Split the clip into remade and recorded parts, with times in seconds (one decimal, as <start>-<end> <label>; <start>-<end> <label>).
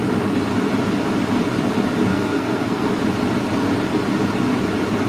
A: 0.0-2.1 recorded; 2.1-2.9 remade; 2.9-5.1 recorded